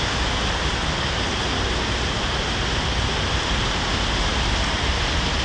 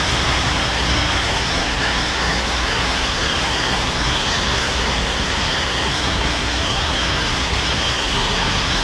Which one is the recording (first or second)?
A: first